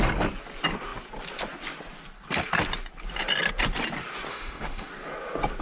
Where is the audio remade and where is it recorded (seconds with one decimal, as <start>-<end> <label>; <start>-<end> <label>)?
0.0-4.3 recorded; 4.3-4.9 remade; 4.9-5.6 recorded